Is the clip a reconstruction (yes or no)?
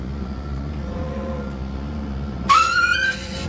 yes